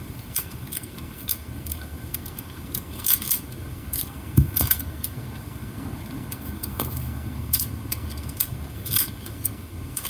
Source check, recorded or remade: remade